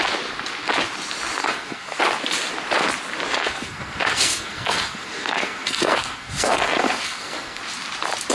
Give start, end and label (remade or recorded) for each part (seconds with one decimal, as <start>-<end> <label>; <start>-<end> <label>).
0.0-1.4 recorded; 1.4-2.0 remade; 2.0-3.3 recorded; 3.3-7.6 remade; 7.6-8.3 recorded